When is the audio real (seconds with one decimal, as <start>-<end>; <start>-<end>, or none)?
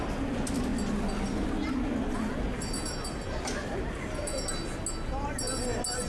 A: 0.0-6.1